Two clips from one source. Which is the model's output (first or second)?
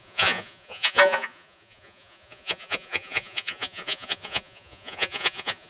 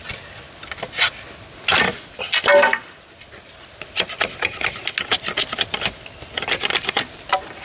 first